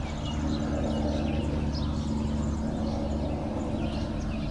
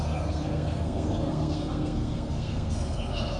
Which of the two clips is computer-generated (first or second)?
second